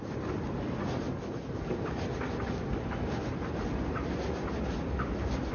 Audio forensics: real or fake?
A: real